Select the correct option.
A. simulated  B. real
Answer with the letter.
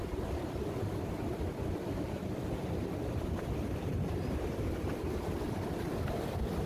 B